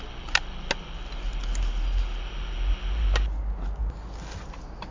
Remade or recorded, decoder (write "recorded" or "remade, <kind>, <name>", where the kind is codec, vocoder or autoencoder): recorded